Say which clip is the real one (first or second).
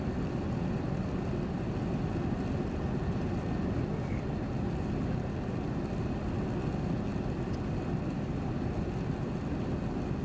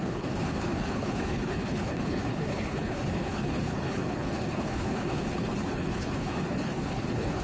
first